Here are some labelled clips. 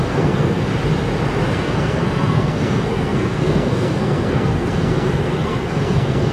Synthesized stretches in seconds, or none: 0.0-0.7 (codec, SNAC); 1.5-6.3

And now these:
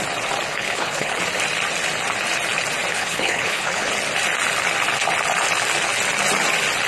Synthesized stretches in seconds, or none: 0.5-1.2 (codec, HILCodec); 2.9-3.9

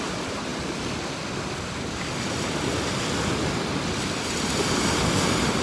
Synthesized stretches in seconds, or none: none

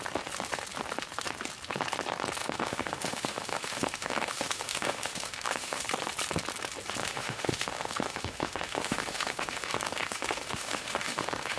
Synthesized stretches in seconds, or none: 2.4-5.8 (autoencoder, DAC-VAE); 7.0-11.6

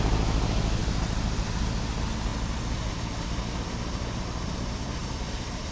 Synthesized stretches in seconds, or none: 0.8-1.6 (vocoder, BigVGAN v2); 5.0-5.7

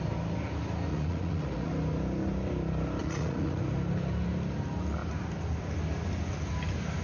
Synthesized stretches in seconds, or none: 0.9-1.7 (vocoder, Vocos); 3.0-3.6

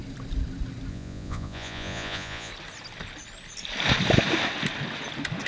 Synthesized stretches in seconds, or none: 0.9-2.5 (vocoder, Vocos)

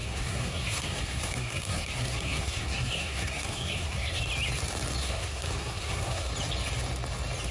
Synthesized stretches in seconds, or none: 0.0-4.2 (codec, SNAC); 5.0-6.3